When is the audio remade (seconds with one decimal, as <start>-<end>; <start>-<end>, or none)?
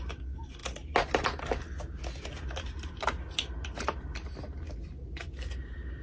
none